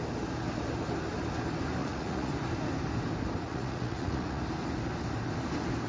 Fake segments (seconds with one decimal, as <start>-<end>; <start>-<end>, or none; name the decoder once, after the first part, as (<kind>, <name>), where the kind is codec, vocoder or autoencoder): 1.8-2.3 (vocoder, Vocos); 3.4-4.4